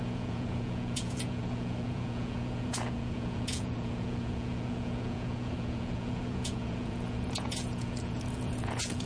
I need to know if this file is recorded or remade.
remade